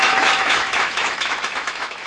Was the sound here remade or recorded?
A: remade